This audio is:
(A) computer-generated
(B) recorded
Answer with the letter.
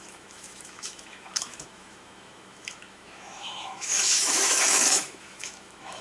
A